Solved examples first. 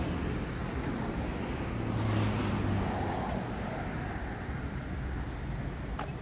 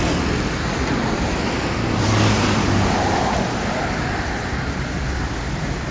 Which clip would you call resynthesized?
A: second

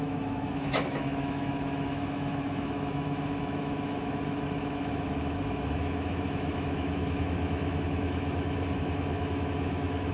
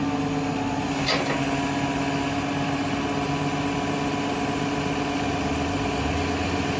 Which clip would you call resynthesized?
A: first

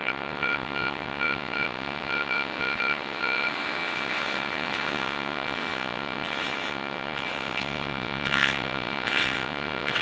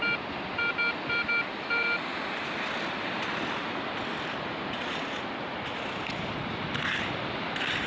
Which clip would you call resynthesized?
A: first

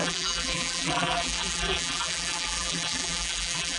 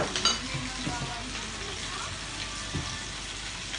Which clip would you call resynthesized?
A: first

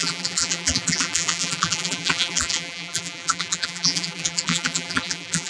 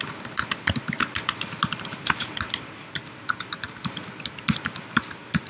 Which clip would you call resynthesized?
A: first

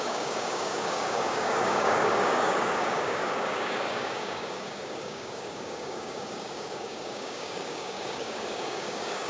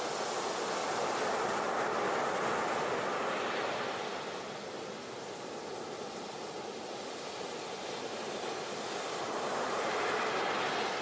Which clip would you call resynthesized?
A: first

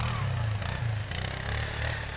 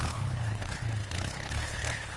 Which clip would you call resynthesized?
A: second